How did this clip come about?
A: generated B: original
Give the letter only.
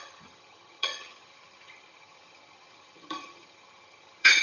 A